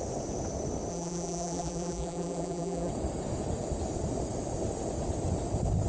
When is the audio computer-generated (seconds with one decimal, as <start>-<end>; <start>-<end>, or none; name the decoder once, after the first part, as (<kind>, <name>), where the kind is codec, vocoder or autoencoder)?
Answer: 0.9-2.9 (vocoder, BigVGAN v2)